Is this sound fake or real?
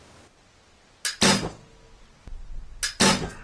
real